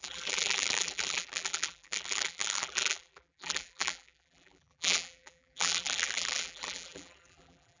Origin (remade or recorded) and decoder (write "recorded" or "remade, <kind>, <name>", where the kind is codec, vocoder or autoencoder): remade, vocoder, BigVGAN v2